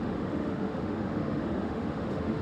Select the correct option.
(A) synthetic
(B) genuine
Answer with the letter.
A